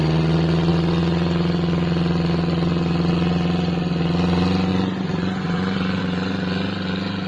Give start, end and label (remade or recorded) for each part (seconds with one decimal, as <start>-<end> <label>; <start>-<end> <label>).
0.0-4.7 recorded; 4.7-6.0 remade; 6.0-7.3 recorded